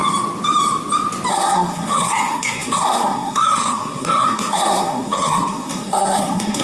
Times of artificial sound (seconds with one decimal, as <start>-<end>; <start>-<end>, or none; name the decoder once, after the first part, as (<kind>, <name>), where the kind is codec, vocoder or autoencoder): 1.3-6.6 (codec, SNAC)